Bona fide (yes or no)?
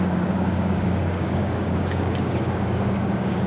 no